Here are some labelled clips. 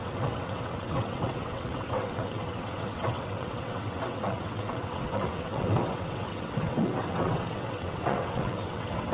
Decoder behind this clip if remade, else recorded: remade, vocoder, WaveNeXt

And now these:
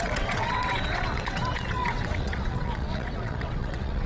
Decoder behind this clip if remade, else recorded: remade, vocoder, WaveNeXt